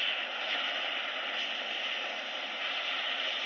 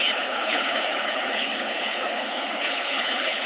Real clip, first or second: first